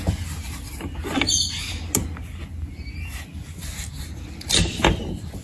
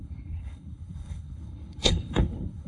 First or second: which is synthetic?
second